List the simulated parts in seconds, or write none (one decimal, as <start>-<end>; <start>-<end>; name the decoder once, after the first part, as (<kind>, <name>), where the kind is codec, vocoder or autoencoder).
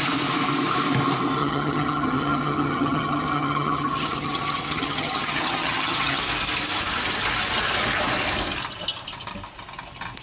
1.4-6.2 (vocoder, HiFi-GAN)